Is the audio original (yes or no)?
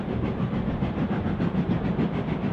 yes